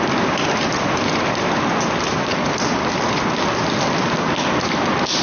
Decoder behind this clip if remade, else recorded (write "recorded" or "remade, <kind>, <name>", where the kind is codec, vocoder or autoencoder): recorded